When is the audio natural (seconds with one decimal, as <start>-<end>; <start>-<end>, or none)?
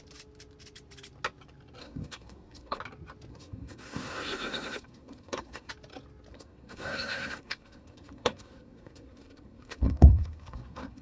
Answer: 0.0-1.8; 2.8-3.3; 5.7-6.3